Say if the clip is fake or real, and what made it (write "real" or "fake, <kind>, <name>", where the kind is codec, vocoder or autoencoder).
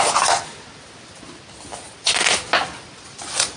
real